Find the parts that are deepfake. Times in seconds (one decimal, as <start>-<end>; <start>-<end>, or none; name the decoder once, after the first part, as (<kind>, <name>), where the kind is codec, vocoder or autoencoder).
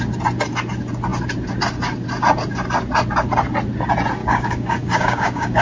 4.2-5.6 (codec, DAC)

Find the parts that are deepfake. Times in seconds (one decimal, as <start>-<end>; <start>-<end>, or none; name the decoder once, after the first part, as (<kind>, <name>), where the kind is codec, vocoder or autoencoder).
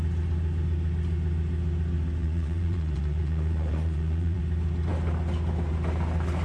2.2-4.4 (vocoder, Vocos)